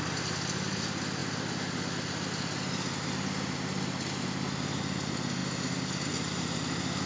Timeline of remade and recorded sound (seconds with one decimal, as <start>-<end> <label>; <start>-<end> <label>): 0.0-7.1 recorded